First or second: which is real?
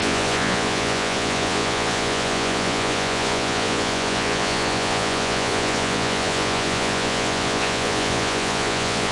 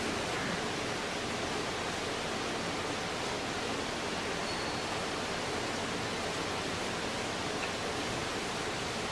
second